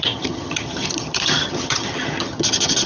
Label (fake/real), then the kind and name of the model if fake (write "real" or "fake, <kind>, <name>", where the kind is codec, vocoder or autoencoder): fake, vocoder, HiFi-GAN